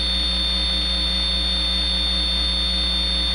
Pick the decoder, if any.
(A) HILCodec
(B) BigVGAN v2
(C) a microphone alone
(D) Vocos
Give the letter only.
C